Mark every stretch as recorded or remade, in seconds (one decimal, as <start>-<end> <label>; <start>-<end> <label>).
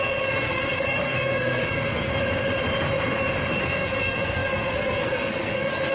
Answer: 0.0-2.1 remade; 2.1-3.6 recorded; 3.6-5.9 remade